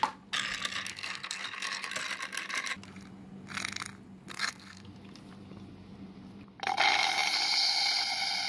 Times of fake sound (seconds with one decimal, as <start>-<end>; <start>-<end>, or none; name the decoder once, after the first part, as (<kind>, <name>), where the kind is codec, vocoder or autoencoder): 0.9-1.9 (codec, SNAC); 4.3-4.9